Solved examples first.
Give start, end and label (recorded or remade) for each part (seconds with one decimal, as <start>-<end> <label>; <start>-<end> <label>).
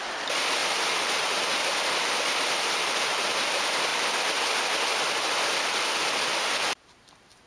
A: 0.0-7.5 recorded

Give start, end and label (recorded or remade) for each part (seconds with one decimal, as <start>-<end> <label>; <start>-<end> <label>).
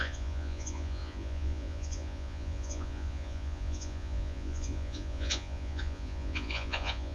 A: 0.0-7.1 remade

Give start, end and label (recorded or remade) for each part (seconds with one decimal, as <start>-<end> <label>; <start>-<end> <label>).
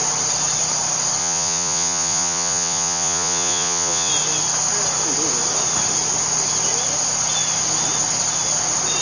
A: 0.0-1.2 recorded; 1.2-4.1 remade; 4.1-9.0 recorded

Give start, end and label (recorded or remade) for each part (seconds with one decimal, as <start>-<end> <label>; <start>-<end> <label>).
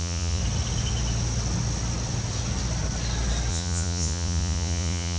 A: 0.0-0.4 remade; 0.4-3.5 recorded; 3.5-5.2 remade